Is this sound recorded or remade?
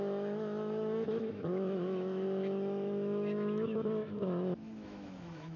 remade